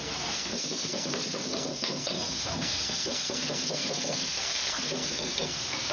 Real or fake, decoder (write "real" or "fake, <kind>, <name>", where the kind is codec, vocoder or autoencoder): fake, codec, SNAC